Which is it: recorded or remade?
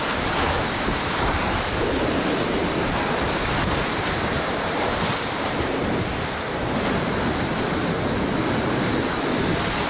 recorded